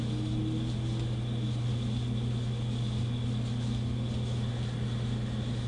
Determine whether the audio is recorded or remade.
recorded